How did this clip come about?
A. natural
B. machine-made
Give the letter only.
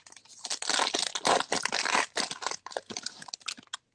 A